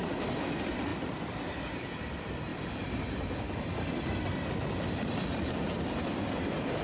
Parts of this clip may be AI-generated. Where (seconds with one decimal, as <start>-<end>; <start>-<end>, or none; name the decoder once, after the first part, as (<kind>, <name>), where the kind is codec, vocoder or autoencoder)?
0.0-2.5 (vocoder, BigVGAN v2); 5.3-6.8